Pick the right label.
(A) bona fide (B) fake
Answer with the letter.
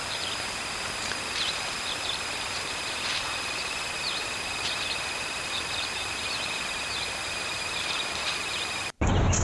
B